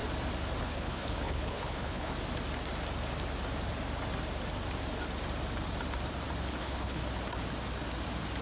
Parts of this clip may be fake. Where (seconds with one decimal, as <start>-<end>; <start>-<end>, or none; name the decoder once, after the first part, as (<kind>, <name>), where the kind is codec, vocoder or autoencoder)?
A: 0.6-2.1 (codec, HILCodec); 6.6-7.0